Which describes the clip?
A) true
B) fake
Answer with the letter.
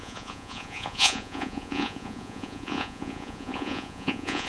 B